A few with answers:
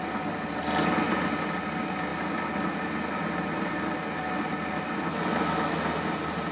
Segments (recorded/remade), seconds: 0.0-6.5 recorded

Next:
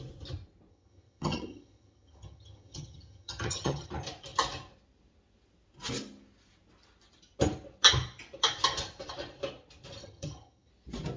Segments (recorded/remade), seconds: 0.0-0.7 recorded; 0.7-3.9 remade; 3.9-10.0 recorded; 10.0-10.7 remade; 10.7-11.2 recorded

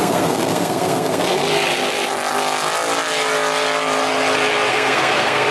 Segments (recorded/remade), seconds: 0.0-1.4 remade; 1.4-4.7 recorded; 4.7-5.5 remade